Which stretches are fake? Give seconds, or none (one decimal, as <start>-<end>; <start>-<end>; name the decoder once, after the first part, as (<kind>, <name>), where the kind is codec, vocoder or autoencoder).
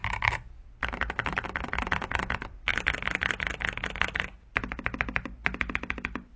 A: none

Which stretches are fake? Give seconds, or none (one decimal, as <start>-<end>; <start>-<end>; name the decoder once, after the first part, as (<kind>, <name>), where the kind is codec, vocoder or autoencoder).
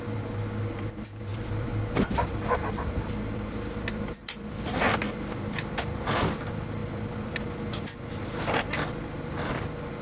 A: 1.3-5.8 (vocoder, BigVGAN v2); 6.8-7.5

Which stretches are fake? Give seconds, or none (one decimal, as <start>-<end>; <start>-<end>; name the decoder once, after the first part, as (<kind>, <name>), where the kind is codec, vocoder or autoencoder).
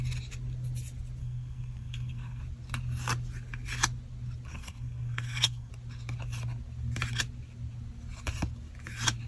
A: 1.2-2.4 (codec, SNAC); 4.5-5.7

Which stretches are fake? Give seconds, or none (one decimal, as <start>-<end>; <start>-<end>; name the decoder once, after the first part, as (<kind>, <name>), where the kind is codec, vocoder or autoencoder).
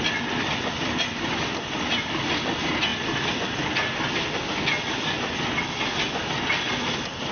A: none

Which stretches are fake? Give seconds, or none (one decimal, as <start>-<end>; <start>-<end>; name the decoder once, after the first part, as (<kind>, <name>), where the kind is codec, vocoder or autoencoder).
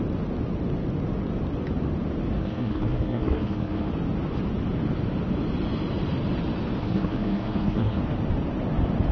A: 2.4-3.9 (codec, SNAC); 6.8-8.0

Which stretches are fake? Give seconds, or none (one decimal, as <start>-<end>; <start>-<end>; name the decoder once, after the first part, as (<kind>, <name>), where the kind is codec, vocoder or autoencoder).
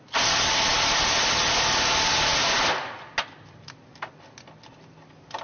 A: none